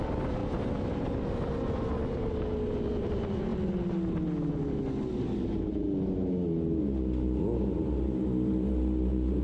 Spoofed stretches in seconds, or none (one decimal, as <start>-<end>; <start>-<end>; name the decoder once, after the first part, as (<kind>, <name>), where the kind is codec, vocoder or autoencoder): none